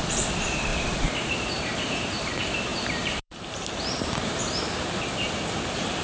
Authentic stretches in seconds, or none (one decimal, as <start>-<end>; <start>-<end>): 0.0-0.7; 2.3-2.7; 4.4-6.0